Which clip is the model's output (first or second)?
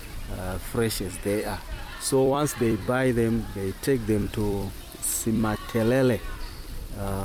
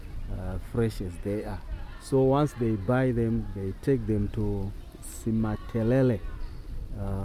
first